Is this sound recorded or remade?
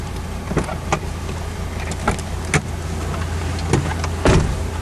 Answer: recorded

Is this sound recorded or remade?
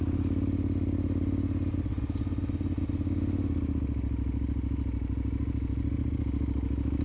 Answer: recorded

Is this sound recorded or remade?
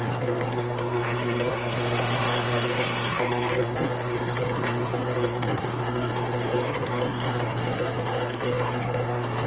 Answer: remade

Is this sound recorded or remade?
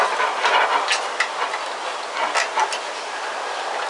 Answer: recorded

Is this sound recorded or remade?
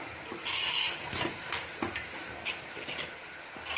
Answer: recorded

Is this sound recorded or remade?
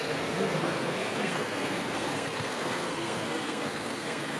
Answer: remade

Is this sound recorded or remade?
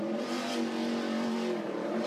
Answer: remade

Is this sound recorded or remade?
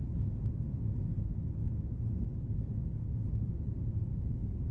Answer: recorded